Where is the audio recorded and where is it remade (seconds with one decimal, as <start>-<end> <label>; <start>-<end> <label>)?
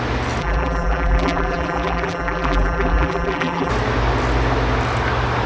0.0-0.4 recorded; 0.4-3.7 remade; 3.7-5.5 recorded